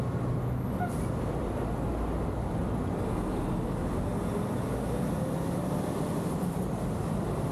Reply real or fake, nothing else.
real